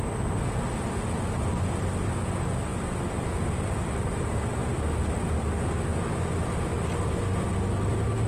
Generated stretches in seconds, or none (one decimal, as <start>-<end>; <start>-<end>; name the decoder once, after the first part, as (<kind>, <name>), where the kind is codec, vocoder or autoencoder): 2.7-4.7 (vocoder, BigVGAN v2)